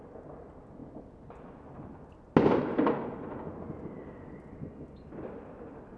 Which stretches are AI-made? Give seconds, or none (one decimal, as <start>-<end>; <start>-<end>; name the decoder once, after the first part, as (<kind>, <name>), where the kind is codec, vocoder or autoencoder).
none